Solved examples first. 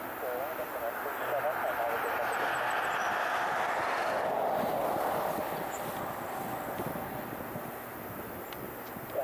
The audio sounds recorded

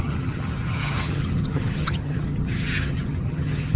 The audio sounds remade